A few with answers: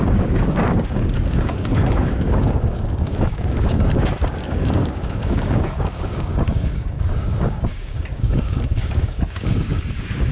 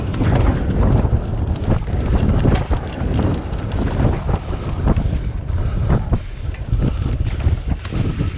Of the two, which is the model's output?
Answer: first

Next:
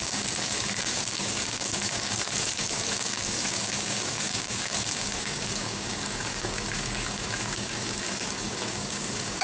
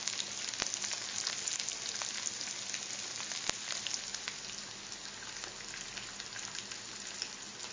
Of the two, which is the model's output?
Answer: first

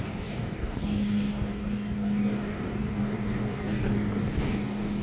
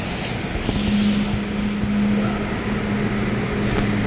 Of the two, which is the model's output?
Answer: first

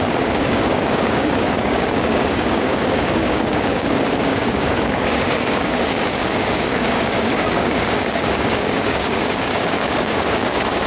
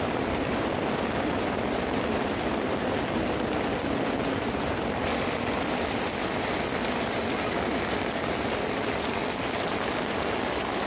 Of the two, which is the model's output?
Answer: first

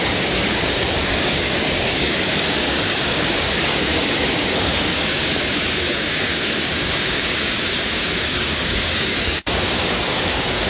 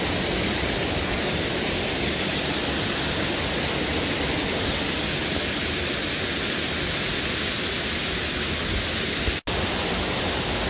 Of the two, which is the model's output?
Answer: first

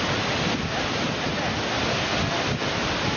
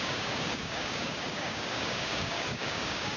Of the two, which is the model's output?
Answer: second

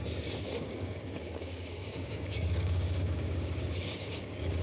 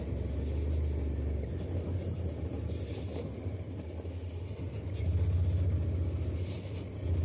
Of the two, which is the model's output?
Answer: first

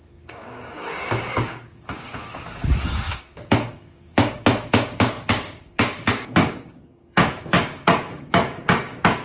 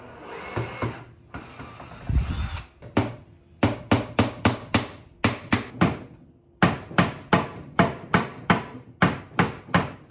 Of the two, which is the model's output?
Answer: first